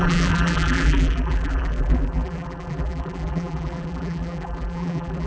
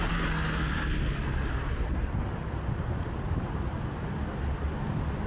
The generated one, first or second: first